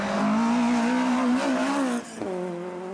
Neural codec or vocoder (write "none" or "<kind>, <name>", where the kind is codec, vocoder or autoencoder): none